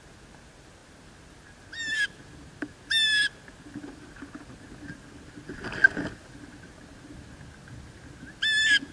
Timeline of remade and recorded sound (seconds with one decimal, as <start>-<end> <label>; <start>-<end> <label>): 0.0-8.9 recorded